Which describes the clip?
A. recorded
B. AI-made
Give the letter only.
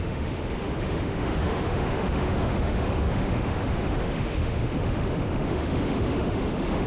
B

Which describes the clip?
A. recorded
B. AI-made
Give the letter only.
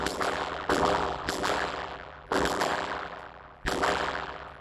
B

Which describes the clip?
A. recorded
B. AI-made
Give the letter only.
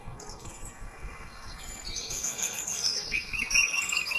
B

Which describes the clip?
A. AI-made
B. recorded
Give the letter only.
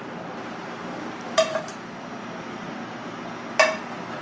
B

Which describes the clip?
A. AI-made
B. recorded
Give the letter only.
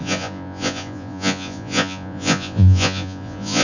A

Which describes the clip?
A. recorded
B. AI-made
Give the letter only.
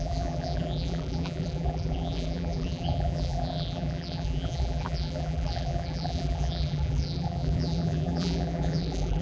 B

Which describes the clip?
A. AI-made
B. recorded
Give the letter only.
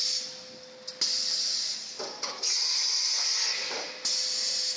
B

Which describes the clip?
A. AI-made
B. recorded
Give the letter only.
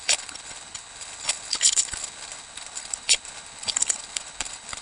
A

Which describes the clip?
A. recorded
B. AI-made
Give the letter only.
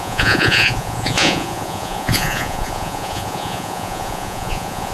B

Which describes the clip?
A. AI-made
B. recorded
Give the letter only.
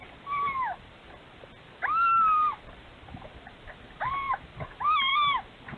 B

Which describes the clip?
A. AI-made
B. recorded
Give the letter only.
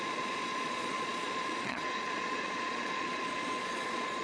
A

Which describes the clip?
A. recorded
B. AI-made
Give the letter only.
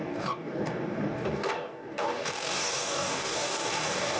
B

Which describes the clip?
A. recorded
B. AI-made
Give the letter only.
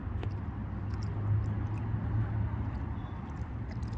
A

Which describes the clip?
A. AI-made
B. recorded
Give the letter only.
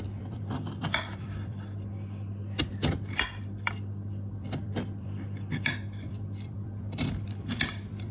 A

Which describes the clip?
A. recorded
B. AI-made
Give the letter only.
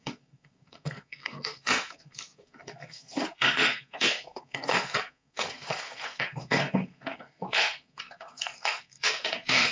B